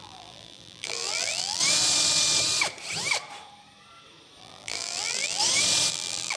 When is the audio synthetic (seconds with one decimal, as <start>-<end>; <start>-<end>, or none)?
0.0-1.6; 4.4-5.4; 5.9-6.4